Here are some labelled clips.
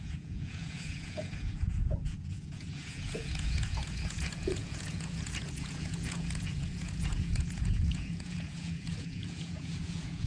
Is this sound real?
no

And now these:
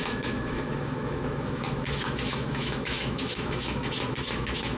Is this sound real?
no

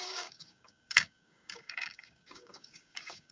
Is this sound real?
no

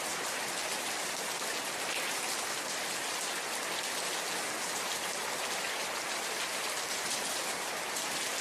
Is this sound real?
yes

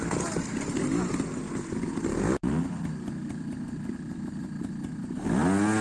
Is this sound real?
yes